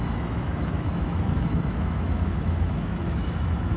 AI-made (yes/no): yes